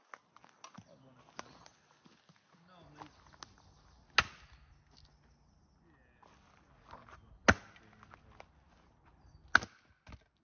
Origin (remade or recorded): recorded